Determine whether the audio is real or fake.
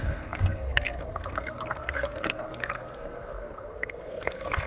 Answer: fake